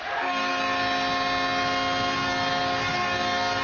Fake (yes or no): no